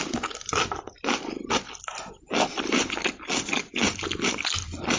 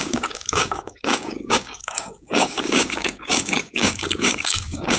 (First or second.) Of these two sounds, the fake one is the second